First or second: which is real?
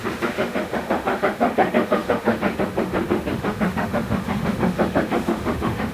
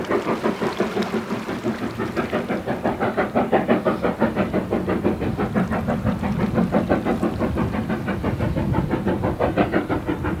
second